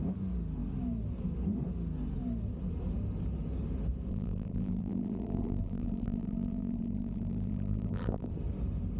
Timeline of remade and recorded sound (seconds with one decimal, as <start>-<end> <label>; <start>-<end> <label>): 0.0-4.1 recorded; 4.1-8.3 remade; 8.3-9.0 recorded